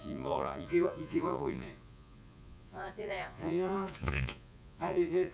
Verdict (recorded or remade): remade